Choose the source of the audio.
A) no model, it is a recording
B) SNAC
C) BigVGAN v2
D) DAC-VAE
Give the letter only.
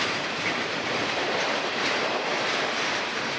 C